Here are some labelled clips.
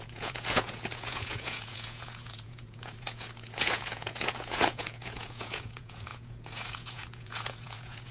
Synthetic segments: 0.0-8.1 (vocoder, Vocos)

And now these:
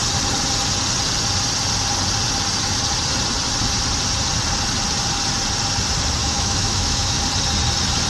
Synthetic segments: 6.2-7.2 (autoencoder, DAC-VAE)